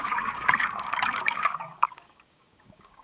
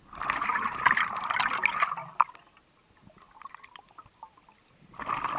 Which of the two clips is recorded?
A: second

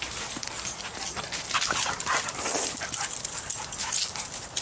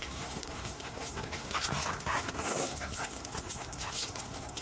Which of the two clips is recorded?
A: first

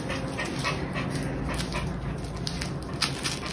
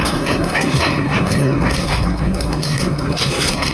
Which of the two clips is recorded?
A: first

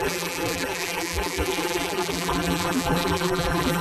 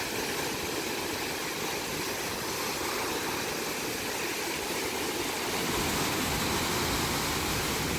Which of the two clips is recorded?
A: second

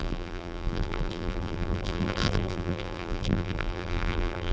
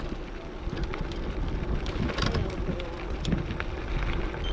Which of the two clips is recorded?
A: second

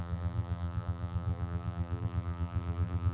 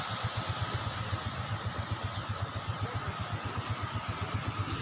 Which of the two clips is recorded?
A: second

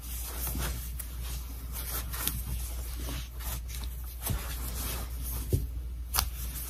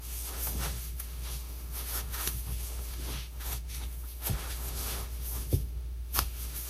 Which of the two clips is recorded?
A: first